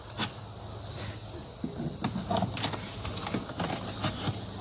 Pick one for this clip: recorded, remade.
recorded